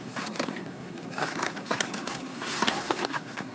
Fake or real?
fake